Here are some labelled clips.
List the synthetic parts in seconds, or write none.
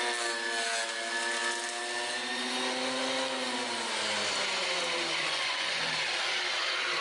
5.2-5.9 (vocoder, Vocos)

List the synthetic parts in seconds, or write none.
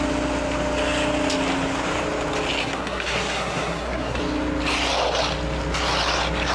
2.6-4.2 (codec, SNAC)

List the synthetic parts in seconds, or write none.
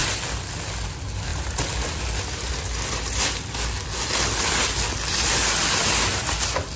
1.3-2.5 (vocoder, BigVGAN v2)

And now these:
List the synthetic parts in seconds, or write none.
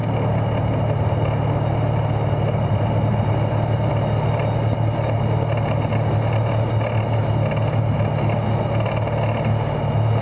none